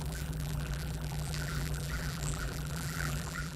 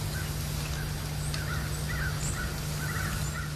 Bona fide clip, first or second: second